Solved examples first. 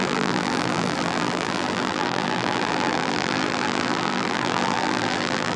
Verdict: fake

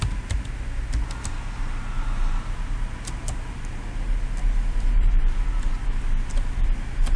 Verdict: real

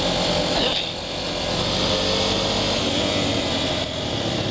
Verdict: real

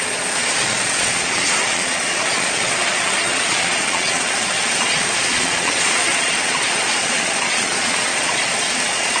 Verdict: fake